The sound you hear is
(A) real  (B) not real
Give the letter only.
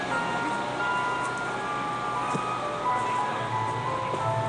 A